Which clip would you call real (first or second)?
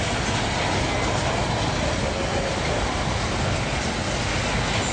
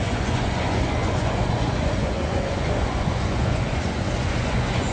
first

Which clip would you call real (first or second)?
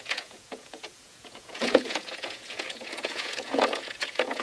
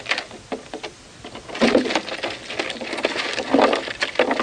second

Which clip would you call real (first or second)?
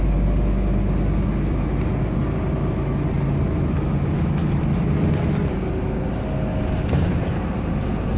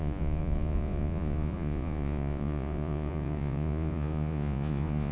first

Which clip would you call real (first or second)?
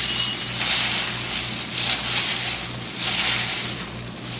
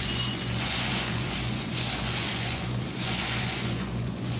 first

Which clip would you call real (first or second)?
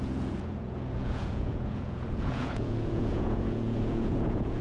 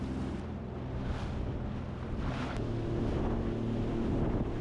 second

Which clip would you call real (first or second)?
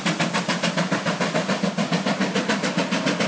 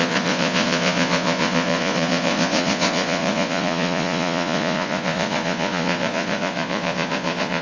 first